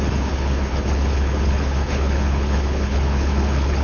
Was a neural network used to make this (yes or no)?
yes